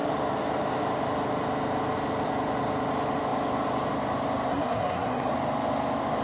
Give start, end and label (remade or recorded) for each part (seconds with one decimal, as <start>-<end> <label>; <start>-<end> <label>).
0.0-4.5 recorded; 4.5-5.3 remade; 5.3-6.2 recorded

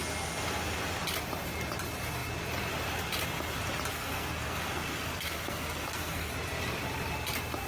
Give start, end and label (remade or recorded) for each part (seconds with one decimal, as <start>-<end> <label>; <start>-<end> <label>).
0.0-3.9 recorded; 3.9-6.3 remade; 6.3-7.7 recorded

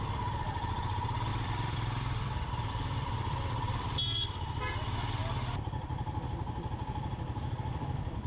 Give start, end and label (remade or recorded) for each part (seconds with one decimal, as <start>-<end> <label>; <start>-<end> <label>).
0.0-1.3 recorded; 1.3-4.7 remade; 4.7-8.3 recorded

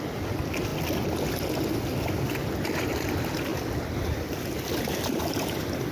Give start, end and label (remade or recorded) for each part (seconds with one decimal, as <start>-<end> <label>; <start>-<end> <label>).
0.0-5.9 recorded

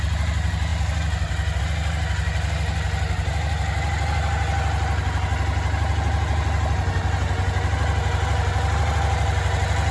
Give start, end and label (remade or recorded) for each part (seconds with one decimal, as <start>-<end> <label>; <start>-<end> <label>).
0.0-9.9 recorded